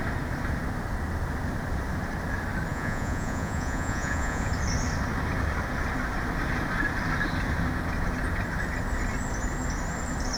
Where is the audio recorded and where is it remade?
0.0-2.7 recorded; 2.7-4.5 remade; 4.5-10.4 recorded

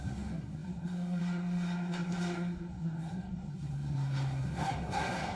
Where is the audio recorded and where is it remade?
0.0-5.4 remade

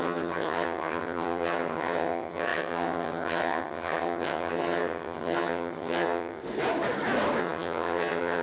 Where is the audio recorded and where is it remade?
0.0-6.4 remade; 6.4-7.4 recorded; 7.4-8.4 remade